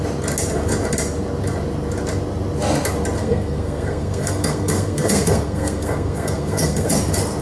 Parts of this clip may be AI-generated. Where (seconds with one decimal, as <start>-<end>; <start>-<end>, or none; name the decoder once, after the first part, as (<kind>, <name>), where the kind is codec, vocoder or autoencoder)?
3.2-6.9 (codec, SNAC)